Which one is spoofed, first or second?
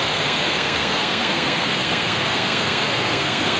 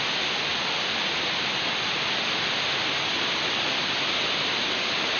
first